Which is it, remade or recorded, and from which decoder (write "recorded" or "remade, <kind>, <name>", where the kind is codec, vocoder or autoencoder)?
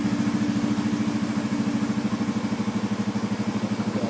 recorded